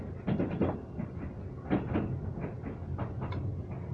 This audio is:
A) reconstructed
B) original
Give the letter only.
B